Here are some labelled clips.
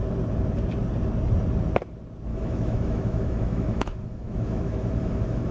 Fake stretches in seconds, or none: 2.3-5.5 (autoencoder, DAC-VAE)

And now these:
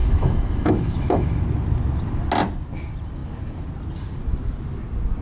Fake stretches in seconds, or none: 0.0-1.4 (autoencoder, DAC-VAE)

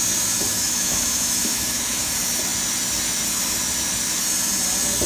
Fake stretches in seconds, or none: 0.5-2.1 (autoencoder, DAC-VAE)

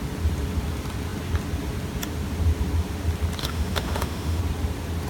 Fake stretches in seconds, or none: 3.4-4.4 (autoencoder, DAC-VAE)

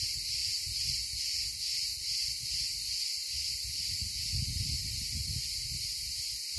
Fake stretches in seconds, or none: none

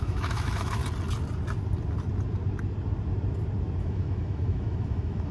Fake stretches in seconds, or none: 0.0-0.8 (autoencoder, DAC-VAE); 3.8-5.3

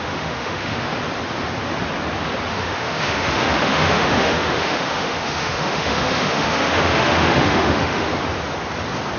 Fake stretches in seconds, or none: 0.0-0.7 (autoencoder, DAC-VAE); 2.5-8.1